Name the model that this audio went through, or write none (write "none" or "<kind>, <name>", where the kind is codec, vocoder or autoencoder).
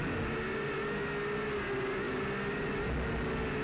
none